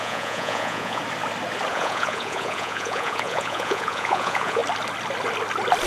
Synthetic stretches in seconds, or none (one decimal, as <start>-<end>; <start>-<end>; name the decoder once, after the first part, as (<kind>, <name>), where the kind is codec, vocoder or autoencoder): 0.0-1.0 (vocoder, Vocos); 1.7-4.6